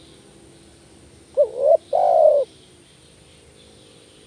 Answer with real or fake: real